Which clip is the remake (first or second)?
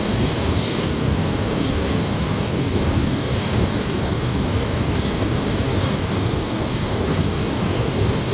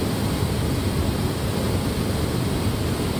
first